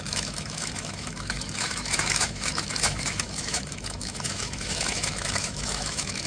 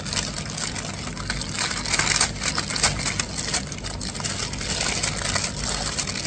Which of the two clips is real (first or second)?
second